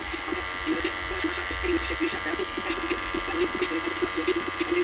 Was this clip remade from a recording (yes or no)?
no